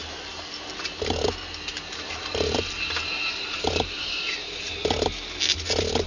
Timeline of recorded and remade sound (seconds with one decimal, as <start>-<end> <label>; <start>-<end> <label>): 0.0-0.7 remade; 0.7-1.7 recorded; 1.7-4.7 remade; 4.7-6.1 recorded